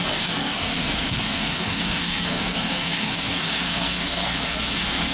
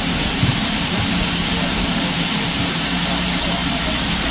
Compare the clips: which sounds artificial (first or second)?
first